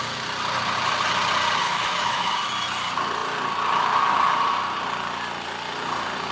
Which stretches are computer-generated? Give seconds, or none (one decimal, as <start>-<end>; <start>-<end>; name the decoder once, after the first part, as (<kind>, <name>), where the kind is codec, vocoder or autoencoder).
1.6-2.4 (autoencoder, DAC-VAE)